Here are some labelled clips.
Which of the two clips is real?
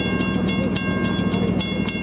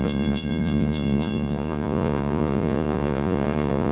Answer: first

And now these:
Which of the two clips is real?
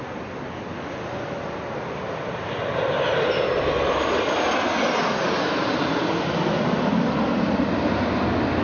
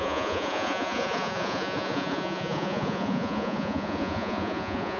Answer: first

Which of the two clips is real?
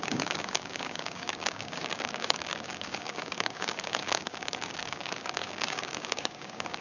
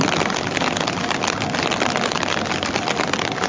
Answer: second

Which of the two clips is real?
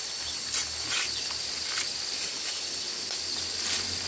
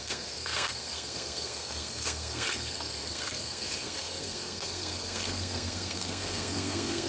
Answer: first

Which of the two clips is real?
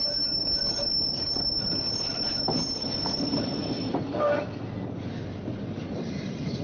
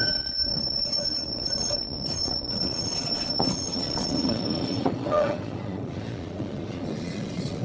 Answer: first